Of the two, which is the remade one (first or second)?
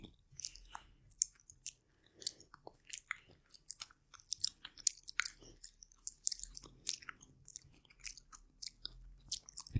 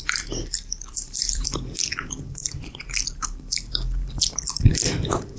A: second